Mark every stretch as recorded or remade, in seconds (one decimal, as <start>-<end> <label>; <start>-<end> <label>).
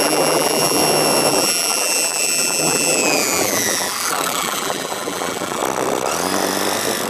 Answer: 0.0-0.8 remade; 0.8-1.3 recorded; 1.3-5.6 remade; 5.6-7.1 recorded